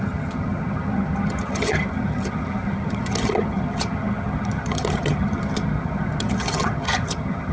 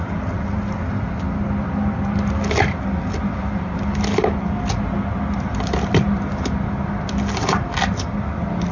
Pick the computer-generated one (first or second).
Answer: first